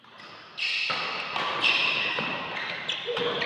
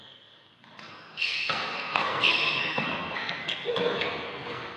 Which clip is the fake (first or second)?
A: second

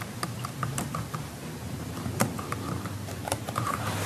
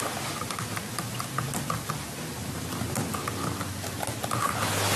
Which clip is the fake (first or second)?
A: first